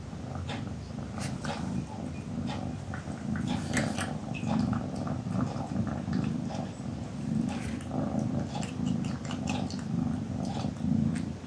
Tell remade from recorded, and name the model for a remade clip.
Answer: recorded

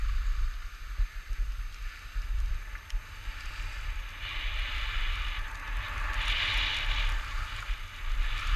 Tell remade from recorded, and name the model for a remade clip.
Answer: recorded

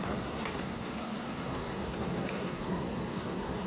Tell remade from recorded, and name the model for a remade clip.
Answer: remade, codec, SNAC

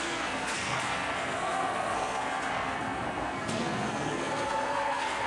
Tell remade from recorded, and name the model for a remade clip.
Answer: remade, codec, SNAC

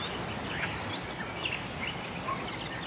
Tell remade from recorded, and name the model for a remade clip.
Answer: recorded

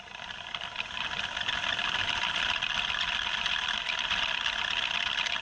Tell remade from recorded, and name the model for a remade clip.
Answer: recorded